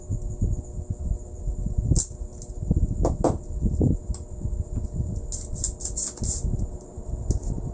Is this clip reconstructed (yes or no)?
no